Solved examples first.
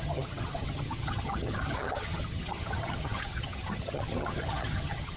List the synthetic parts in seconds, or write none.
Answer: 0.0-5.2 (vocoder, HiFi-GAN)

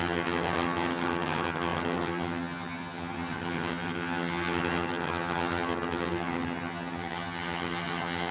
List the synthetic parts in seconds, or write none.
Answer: 0.0-8.3 (vocoder, HiFi-GAN)